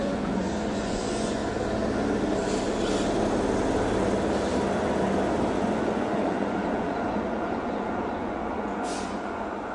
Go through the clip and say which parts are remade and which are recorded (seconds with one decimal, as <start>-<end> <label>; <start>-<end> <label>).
0.0-1.4 remade; 1.4-5.5 recorded; 5.5-9.7 remade